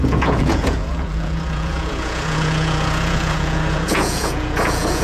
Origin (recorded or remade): remade